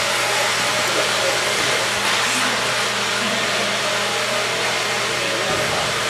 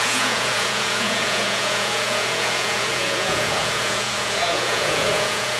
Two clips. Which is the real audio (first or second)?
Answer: first